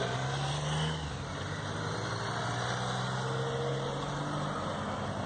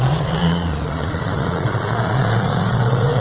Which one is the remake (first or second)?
second